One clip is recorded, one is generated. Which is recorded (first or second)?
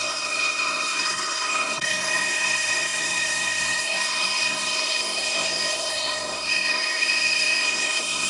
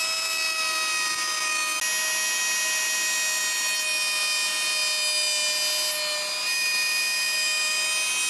second